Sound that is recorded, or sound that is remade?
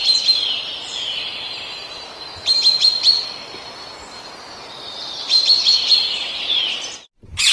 recorded